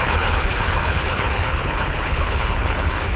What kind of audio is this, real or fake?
fake